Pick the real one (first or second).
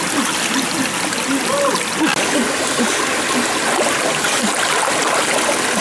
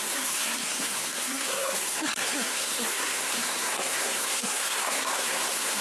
first